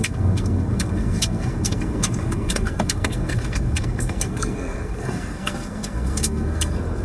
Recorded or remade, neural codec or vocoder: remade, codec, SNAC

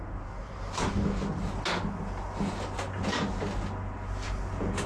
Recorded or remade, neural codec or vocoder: recorded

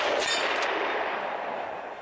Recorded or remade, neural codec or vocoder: recorded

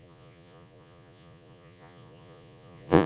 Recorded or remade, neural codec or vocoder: remade, vocoder, Vocos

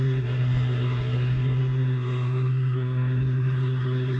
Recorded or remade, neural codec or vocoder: remade, codec, SNAC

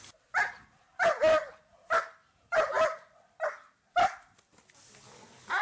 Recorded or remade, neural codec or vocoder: recorded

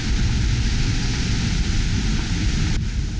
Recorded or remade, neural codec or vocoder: recorded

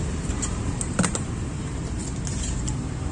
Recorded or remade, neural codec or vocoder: remade, vocoder, BigVGAN v2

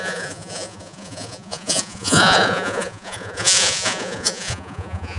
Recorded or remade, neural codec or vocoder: remade, vocoder, Vocos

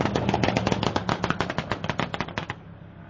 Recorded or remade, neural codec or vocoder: recorded